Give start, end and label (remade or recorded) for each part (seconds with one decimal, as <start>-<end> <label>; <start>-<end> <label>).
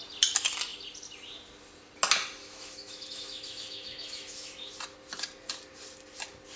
0.0-2.4 recorded; 2.4-4.7 remade; 4.7-6.6 recorded